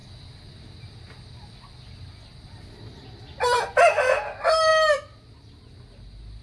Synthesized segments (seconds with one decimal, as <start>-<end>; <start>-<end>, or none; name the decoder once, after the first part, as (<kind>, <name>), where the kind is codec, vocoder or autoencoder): none